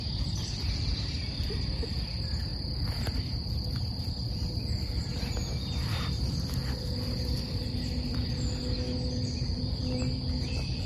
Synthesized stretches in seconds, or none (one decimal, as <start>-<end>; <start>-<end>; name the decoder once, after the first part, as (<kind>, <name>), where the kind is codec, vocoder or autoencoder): none